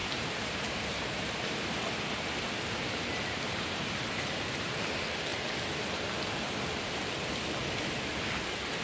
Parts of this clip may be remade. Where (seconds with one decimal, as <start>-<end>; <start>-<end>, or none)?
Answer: 0.0-4.8